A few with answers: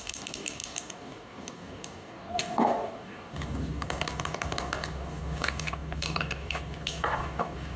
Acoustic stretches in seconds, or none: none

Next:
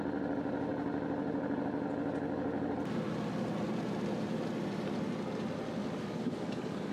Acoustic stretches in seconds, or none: 0.0-5.8

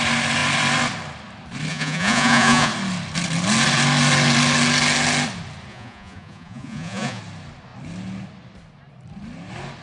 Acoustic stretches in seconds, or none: 0.0-1.7; 2.7-5.7; 7.2-9.8

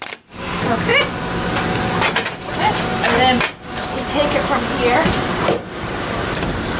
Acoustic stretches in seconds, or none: 0.9-5.0

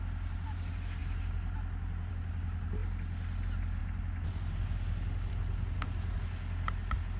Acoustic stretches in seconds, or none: 0.0-7.2

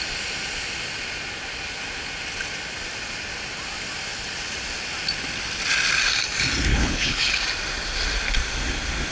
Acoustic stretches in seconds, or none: 0.0-6.7; 7.4-9.1